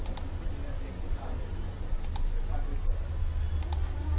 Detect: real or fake real